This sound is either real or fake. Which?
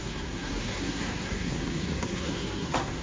fake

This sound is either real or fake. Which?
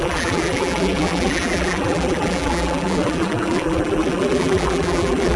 fake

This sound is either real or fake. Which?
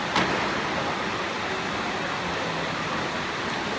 real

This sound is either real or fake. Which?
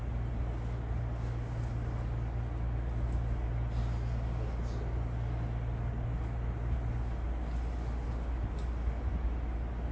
real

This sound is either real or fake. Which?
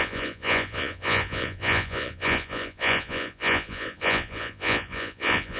fake